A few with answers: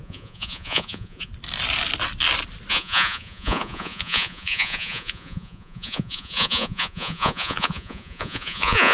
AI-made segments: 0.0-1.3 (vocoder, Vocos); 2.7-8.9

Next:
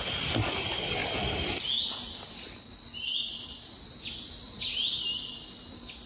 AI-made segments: none

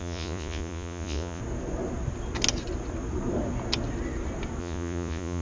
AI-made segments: 0.0-1.4 (vocoder, Vocos); 4.6-5.4

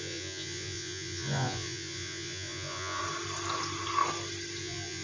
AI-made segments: 0.0-3.0 (vocoder, Vocos); 4.6-5.0

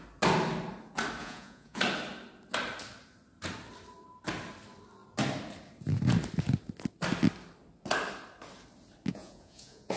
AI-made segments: 1.2-1.8 (vocoder, Vocos); 9.1-10.0

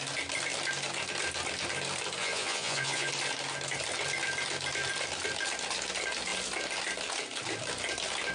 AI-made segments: 2.2-3.1 (vocoder, Vocos)